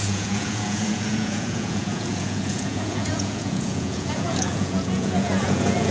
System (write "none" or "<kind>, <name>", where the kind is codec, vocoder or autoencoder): vocoder, Vocos